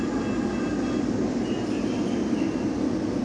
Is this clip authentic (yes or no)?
yes